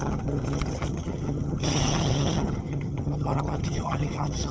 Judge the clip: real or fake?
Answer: fake